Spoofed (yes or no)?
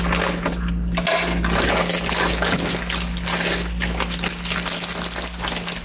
no